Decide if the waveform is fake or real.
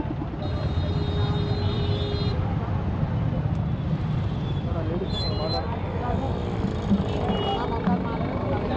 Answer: real